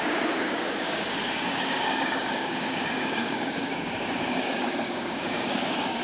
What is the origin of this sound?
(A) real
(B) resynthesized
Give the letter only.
B